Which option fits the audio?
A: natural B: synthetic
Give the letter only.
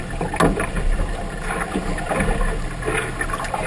A